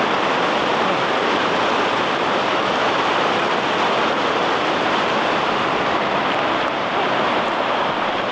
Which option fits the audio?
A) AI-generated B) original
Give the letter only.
A